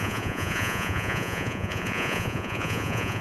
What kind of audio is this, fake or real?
fake